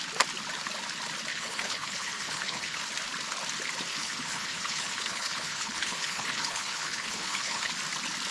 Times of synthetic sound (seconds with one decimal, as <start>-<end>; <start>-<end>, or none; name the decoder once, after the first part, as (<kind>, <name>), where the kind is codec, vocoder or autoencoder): 1.3-2.8 (codec, HILCodec); 3.9-7.7